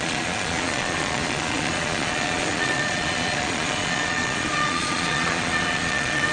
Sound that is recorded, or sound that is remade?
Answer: remade